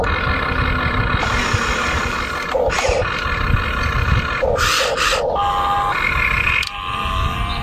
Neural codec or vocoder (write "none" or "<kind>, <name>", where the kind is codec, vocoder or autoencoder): none